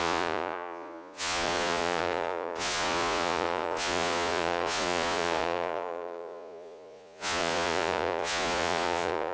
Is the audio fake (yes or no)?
yes